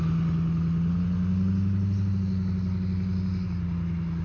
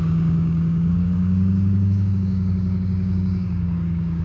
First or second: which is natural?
first